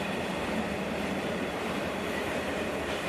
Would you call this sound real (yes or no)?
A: no